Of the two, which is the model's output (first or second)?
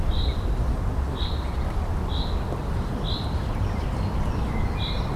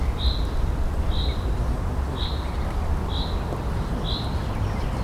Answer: first